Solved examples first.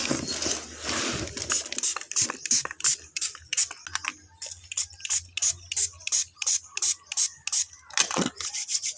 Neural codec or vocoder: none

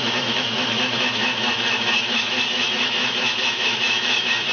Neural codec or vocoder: autoencoder, DAC-VAE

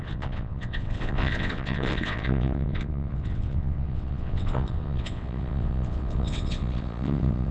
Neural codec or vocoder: vocoder, WaveNeXt